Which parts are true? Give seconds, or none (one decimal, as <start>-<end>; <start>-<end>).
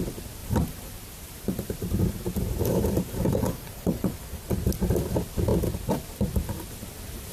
0.0-0.4; 4.1-7.3